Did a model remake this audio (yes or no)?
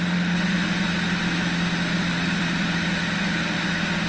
no